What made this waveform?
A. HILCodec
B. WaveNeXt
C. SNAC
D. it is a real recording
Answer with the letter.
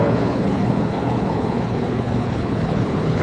A